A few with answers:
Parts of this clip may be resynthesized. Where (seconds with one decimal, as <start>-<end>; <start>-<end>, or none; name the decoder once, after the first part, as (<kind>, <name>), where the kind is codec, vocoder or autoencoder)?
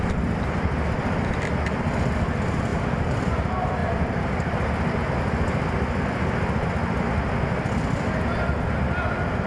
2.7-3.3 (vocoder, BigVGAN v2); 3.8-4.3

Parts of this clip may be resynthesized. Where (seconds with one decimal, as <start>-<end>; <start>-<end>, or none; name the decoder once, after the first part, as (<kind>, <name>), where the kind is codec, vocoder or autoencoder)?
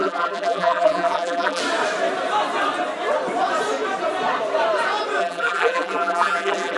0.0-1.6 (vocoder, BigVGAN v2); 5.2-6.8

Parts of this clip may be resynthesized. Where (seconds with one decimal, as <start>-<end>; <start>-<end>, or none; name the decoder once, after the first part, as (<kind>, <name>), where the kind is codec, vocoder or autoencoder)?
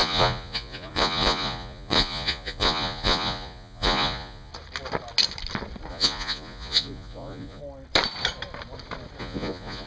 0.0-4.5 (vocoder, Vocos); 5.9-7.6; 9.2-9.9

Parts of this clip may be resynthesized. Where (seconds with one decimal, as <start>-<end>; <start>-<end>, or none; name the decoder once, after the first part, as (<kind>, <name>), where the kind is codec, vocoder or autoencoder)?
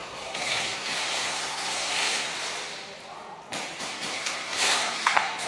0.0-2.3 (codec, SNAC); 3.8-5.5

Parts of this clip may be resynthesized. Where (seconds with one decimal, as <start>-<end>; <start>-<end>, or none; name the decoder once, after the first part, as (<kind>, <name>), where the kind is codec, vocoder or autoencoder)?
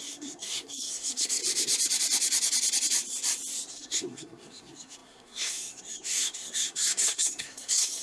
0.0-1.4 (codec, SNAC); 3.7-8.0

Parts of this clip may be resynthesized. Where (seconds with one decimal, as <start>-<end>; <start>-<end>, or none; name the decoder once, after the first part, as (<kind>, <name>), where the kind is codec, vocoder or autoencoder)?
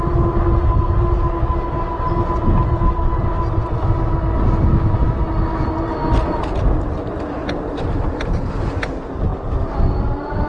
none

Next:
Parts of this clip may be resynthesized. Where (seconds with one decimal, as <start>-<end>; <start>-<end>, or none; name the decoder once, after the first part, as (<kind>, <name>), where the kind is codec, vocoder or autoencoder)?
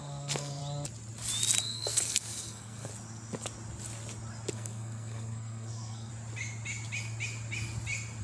0.0-0.6 (codec, SNAC); 1.6-2.9; 4.5-6.1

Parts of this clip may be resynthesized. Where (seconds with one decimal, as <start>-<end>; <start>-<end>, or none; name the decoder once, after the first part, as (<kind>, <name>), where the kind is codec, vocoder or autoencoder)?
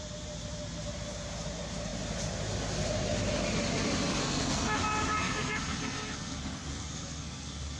4.1-4.8 (codec, SNAC); 5.2-7.8